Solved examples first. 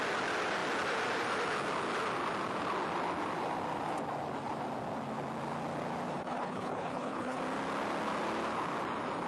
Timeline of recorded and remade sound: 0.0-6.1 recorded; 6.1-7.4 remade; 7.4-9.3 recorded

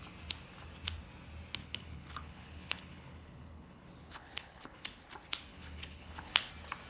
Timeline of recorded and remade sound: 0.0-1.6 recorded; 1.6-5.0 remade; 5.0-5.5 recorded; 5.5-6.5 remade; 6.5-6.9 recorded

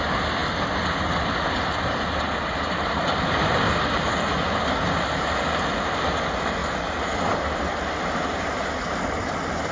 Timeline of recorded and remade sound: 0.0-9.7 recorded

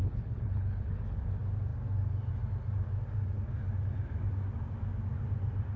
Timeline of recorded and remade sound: 0.0-1.2 remade; 1.2-5.8 recorded

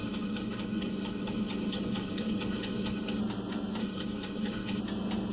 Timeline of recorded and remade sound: 0.0-3.2 remade; 3.2-3.8 recorded; 3.8-4.8 remade; 4.8-5.3 recorded

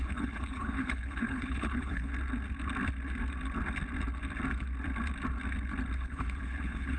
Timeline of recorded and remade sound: 0.0-2.1 remade; 2.1-6.0 recorded; 6.0-7.0 remade

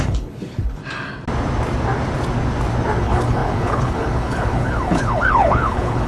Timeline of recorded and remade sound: 0.0-0.8 remade; 0.8-3.0 recorded; 3.0-6.1 remade

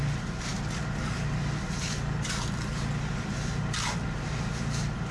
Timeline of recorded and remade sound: 0.0-5.1 recorded